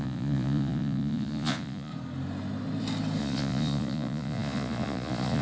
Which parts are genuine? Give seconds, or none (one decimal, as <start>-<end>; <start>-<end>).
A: 1.9-3.2